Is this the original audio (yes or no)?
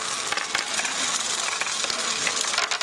yes